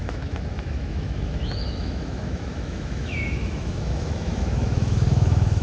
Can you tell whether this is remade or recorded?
remade